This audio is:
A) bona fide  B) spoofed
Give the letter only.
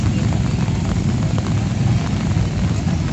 A